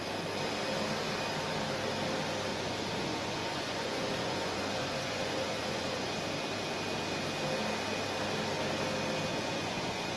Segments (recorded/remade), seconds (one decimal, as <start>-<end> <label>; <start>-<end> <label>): 0.0-2.5 recorded; 2.5-6.2 remade; 6.2-9.3 recorded; 9.3-10.2 remade